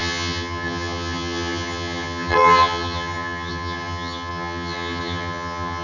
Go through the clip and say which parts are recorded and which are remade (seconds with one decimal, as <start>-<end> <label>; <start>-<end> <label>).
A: 0.0-5.8 remade